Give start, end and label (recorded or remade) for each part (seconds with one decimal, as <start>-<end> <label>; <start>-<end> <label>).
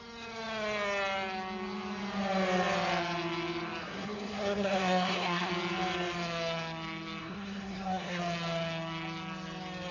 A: 0.0-3.8 recorded; 3.8-5.5 remade; 5.5-7.2 recorded; 7.2-8.2 remade; 8.2-9.9 recorded